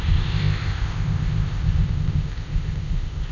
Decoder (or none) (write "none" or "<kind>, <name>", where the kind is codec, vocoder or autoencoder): codec, ZipCodec